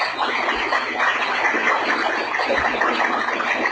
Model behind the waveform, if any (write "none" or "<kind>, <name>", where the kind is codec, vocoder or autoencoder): none